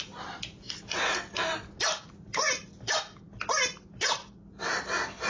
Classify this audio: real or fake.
real